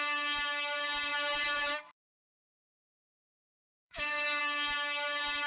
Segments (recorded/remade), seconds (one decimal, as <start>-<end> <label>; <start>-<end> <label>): 0.0-1.1 recorded; 1.1-4.4 remade; 4.4-5.5 recorded